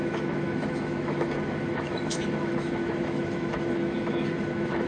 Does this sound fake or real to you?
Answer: fake